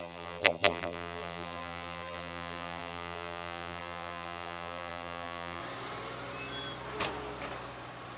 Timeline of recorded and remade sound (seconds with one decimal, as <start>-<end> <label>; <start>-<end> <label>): 0.0-5.6 remade; 5.6-8.2 recorded